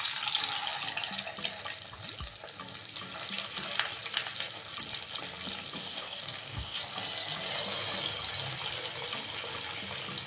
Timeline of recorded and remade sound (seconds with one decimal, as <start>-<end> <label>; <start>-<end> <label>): 0.0-5.8 recorded; 5.8-6.8 remade; 6.8-10.3 recorded